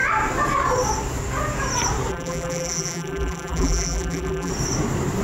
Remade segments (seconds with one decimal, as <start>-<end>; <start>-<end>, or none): 2.1-4.5